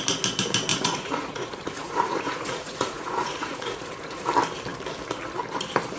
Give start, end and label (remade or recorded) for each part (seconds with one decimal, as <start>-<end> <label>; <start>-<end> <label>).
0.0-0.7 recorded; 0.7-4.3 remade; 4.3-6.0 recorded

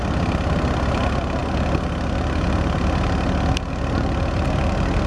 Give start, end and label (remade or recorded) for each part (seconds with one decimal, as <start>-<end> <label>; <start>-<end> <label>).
0.0-5.1 recorded

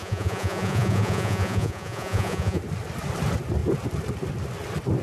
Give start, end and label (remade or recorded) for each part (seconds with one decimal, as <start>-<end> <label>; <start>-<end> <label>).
0.0-2.6 remade; 2.6-5.0 recorded

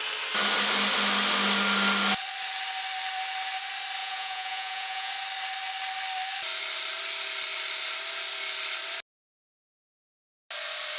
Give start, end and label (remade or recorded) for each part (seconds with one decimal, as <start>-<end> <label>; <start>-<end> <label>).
0.0-4.0 recorded; 4.0-5.1 remade; 5.1-11.0 recorded

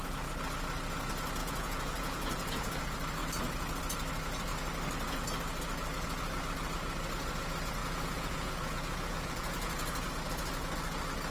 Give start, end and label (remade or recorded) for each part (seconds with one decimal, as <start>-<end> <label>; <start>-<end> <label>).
0.0-1.4 recorded; 1.4-2.8 remade; 2.8-7.8 recorded; 7.8-10.1 remade; 10.1-11.3 recorded

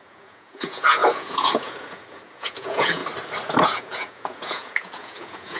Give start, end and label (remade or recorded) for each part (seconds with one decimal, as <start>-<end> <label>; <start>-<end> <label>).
0.0-3.0 remade; 3.0-3.6 recorded; 3.6-5.6 remade

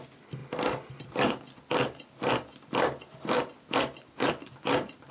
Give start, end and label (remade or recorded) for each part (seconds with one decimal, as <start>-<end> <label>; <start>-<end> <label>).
0.0-5.1 recorded

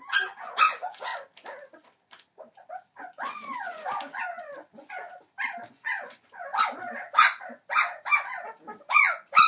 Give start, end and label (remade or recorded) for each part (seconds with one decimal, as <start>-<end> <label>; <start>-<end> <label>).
0.0-1.1 remade; 1.1-3.0 recorded; 3.0-5.0 remade; 5.0-5.7 recorded; 5.7-6.5 remade; 6.5-8.8 recorded; 8.8-9.5 remade